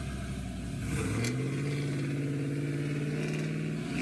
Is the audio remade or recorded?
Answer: recorded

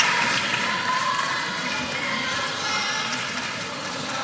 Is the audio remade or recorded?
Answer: recorded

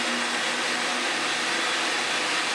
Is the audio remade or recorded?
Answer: recorded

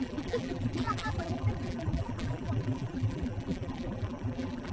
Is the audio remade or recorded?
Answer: remade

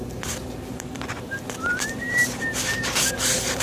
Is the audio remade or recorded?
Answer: remade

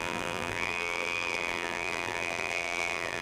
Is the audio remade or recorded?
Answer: remade